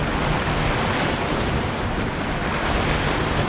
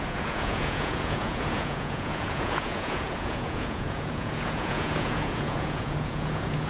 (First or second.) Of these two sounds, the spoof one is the second